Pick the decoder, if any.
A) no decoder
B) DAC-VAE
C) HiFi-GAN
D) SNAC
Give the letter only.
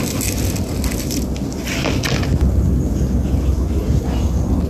A